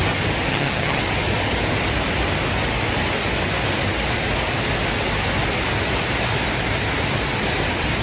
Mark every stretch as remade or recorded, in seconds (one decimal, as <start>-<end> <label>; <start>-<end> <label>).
0.0-0.5 recorded; 0.5-1.0 remade; 1.0-8.0 recorded